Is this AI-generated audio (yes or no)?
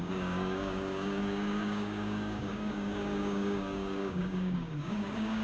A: yes